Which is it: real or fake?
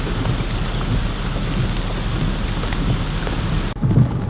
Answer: real